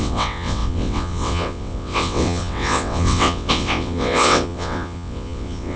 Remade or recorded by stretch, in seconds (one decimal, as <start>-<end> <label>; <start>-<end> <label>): 0.0-5.8 remade